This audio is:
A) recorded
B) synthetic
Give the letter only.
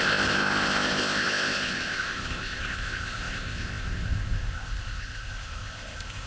B